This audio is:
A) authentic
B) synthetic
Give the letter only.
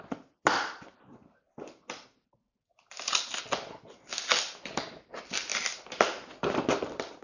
A